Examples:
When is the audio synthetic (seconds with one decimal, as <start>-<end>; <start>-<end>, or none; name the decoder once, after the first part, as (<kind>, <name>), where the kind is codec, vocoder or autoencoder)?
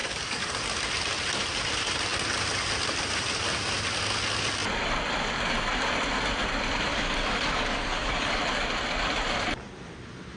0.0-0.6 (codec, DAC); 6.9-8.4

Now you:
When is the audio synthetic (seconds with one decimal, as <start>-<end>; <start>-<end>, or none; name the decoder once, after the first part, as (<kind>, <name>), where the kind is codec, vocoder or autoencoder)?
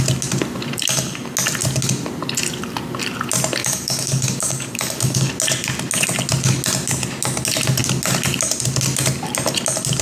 3.6-5.3 (codec, DAC)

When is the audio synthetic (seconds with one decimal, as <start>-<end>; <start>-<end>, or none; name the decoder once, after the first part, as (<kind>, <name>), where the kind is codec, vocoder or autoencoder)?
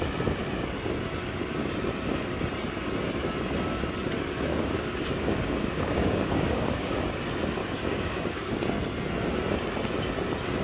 4.5-7.0 (codec, DAC); 7.6-8.6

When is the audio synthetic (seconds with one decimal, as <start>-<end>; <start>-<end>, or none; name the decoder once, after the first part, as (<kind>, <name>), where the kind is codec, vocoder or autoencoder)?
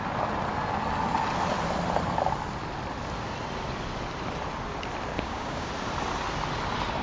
5.1-5.7 (codec, DAC)